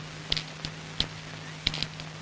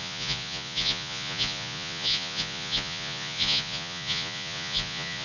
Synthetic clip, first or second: second